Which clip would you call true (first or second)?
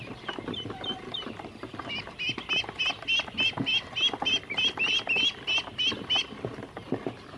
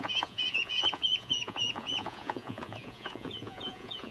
first